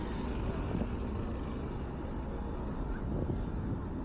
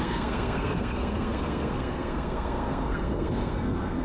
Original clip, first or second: first